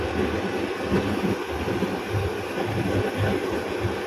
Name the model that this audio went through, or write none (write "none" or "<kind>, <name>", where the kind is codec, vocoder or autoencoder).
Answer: none